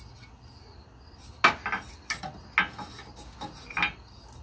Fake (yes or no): no